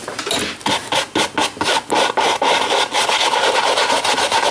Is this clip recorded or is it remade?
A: recorded